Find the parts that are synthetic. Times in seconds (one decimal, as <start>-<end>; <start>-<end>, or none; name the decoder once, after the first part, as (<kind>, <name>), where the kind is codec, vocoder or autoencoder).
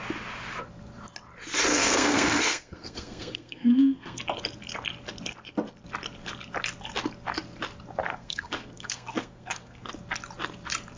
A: 1.7-4.2 (codec, SNAC); 8.1-9.9